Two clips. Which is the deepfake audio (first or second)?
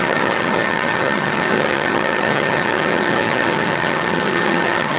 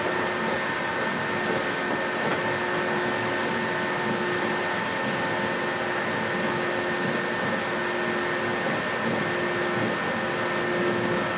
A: first